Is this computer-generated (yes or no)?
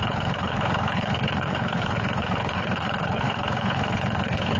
yes